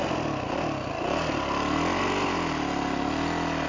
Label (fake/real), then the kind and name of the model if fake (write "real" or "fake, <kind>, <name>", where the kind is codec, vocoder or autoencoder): real